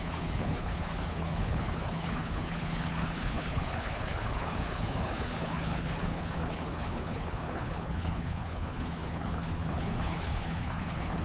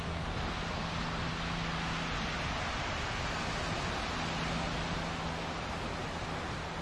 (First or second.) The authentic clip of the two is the second